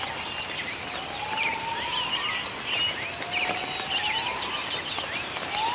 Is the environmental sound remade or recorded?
recorded